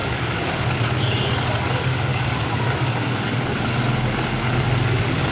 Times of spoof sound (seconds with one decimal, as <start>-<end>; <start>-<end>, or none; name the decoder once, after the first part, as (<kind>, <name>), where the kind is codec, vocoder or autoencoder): 0.0-5.3 (codec, DAC)